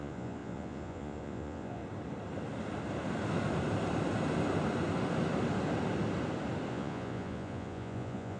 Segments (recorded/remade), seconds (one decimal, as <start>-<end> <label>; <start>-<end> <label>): 0.0-1.8 remade; 1.8-6.7 recorded; 6.7-8.4 remade